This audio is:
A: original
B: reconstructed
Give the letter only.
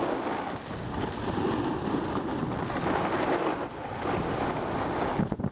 A